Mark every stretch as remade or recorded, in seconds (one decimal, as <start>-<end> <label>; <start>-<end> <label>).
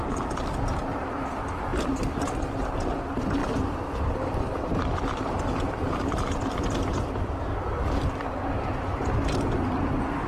0.0-3.4 recorded; 3.4-8.3 remade; 8.3-10.3 recorded